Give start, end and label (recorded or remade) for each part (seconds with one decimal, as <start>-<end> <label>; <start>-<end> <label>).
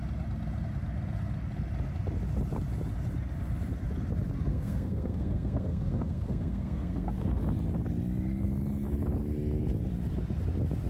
0.0-4.5 recorded; 4.5-7.4 remade; 7.4-10.9 recorded